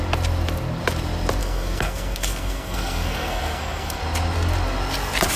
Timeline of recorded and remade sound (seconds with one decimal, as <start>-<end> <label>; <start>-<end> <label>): 0.0-1.4 recorded; 1.4-4.0 remade; 4.0-5.4 recorded